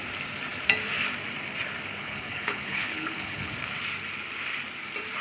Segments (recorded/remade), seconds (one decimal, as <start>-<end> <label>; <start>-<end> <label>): 0.0-2.0 recorded; 2.0-3.5 remade; 3.5-5.2 recorded